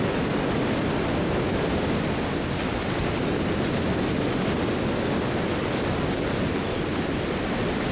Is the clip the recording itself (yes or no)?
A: yes